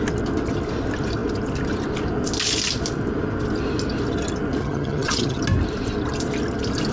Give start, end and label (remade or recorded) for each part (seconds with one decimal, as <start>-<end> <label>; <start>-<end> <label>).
0.0-4.6 recorded; 4.6-5.4 remade; 5.4-6.9 recorded